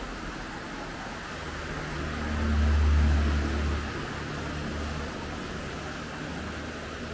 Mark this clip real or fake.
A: real